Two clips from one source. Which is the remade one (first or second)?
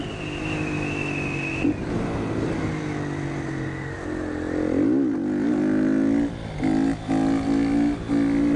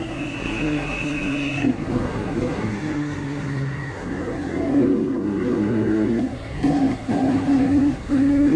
second